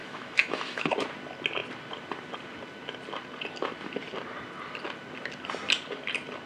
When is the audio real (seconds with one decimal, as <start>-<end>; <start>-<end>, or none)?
0.9-6.5